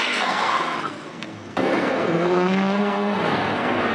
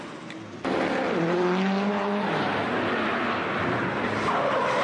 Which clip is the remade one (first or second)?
first